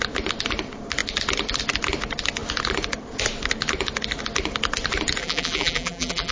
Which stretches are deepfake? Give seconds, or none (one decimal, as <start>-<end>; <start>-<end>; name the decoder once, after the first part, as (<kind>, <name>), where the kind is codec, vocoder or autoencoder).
5.2-6.3 (vocoder, BigVGAN v2)